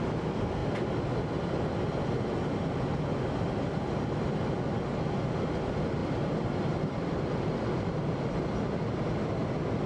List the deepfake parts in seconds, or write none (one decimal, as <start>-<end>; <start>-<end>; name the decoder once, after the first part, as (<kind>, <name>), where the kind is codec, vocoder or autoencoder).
6.0-7.2 (vocoder, BigVGAN v2)